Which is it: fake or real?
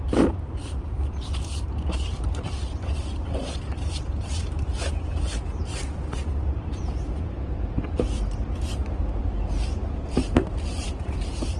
fake